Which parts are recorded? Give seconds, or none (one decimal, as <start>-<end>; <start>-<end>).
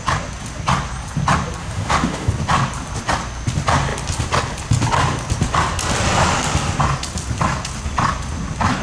0.0-1.6; 2.3-8.8